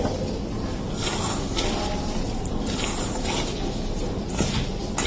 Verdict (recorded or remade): recorded